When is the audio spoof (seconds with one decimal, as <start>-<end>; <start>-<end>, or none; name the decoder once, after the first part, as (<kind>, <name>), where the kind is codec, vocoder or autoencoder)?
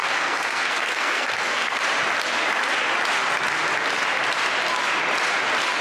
0.0-1.8 (codec, SNAC)